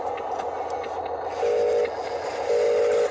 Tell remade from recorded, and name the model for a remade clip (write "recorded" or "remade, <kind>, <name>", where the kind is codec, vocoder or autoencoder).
recorded